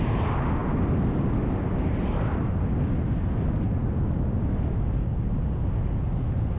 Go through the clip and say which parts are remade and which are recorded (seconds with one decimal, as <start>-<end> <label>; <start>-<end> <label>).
0.0-6.6 recorded